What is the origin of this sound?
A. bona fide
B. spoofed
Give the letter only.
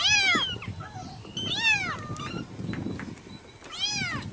A